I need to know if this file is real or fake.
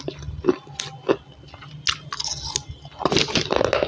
real